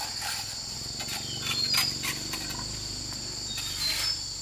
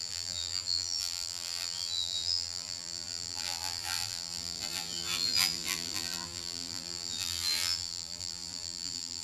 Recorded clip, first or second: first